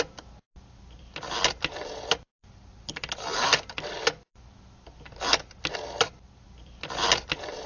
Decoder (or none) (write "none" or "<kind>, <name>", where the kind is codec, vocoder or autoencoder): none